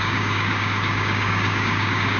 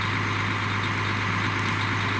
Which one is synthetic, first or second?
first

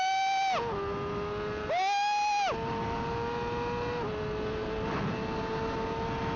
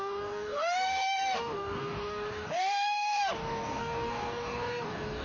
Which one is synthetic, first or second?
second